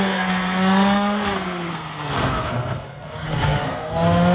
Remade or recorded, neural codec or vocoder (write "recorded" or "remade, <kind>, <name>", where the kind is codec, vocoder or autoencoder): remade, codec, SNAC